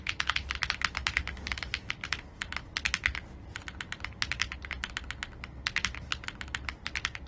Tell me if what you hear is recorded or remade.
recorded